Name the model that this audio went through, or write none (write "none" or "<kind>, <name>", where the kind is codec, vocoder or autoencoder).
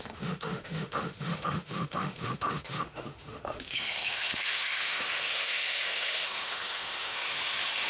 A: autoencoder, DAC-VAE